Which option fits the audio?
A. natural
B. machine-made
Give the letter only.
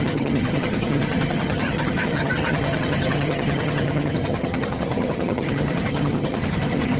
B